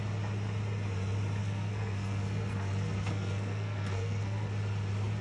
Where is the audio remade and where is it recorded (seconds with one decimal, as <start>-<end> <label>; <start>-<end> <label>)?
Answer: 0.0-1.4 recorded; 1.4-4.5 remade; 4.5-5.2 recorded